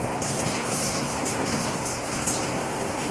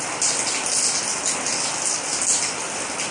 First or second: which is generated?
first